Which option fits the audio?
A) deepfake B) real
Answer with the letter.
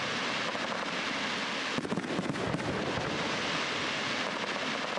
B